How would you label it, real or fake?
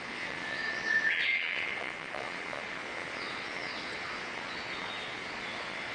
fake